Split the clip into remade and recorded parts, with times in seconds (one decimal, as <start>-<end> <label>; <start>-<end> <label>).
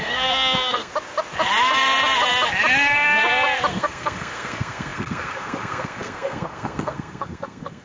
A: 0.0-0.9 remade; 0.9-3.7 recorded; 3.7-7.8 remade